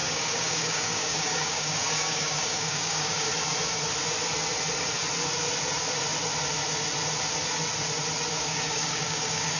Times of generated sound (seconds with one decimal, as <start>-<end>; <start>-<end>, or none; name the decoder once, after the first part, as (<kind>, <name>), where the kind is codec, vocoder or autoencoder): 0.0-3.3 (codec, DAC); 8.3-9.6